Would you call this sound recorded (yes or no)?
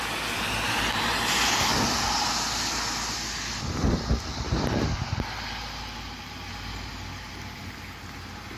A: yes